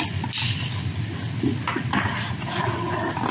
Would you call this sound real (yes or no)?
yes